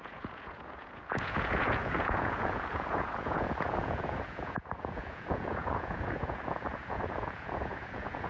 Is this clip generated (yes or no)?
yes